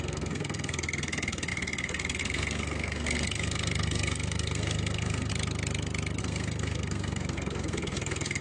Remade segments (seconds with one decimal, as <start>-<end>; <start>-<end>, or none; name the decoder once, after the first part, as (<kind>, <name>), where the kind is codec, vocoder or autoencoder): 0.0-5.3 (codec, SNAC); 6.2-8.4